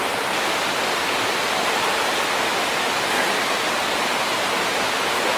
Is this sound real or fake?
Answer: real